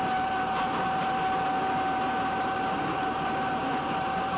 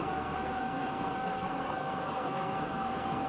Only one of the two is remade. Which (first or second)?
second